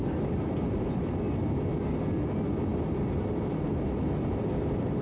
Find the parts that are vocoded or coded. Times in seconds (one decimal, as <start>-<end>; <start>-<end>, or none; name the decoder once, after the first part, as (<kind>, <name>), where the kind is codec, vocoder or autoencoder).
none